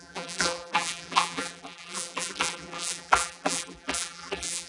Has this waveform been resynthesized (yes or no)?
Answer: yes